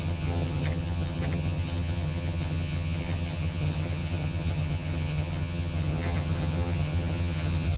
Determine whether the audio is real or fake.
fake